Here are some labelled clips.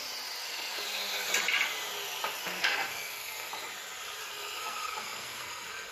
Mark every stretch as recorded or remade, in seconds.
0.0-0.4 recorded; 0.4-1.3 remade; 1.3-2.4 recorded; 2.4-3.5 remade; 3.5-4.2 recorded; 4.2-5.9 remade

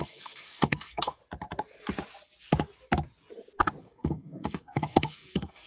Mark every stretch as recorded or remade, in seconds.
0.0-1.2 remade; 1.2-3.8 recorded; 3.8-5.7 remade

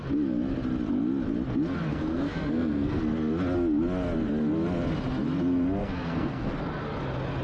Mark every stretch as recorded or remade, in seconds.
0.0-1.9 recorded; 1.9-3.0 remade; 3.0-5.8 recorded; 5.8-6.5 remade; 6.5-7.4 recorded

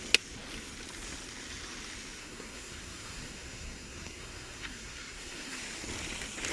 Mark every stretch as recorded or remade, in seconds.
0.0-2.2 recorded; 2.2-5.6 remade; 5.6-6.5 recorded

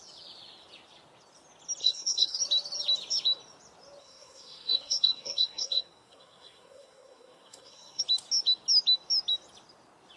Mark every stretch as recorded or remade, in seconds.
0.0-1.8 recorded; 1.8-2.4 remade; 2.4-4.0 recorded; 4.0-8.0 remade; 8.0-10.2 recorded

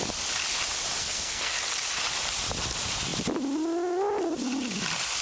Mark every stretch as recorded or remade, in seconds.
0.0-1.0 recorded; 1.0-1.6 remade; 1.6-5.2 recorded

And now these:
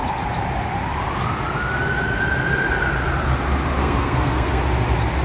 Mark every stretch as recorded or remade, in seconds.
0.0-3.8 recorded; 3.8-4.6 remade; 4.6-5.2 recorded

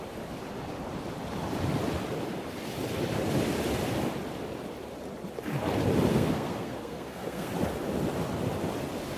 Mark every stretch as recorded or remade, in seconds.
0.0-6.1 recorded; 6.1-7.5 remade; 7.5-9.2 recorded